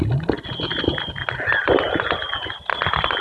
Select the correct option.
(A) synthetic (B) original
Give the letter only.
B